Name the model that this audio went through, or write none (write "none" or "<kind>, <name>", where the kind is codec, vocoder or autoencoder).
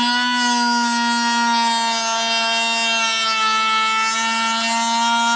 none